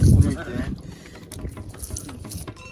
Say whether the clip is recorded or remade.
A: recorded